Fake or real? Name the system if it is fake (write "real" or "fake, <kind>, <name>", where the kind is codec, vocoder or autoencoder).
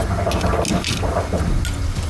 real